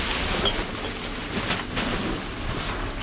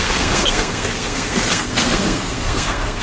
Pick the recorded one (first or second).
first